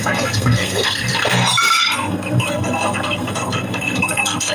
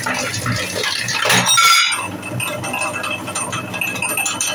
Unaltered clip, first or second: second